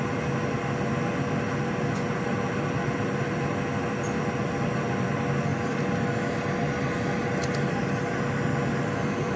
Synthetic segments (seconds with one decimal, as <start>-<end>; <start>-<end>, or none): none